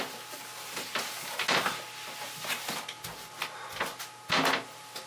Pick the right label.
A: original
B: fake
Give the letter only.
A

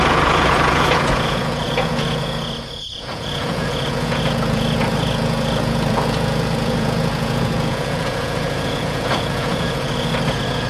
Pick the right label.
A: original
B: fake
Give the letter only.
B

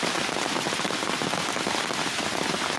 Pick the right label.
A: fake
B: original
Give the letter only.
B